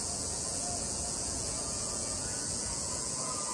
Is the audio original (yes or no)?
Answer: no